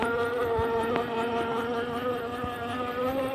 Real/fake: real